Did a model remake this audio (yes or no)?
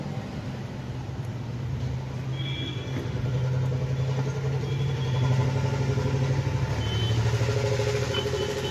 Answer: no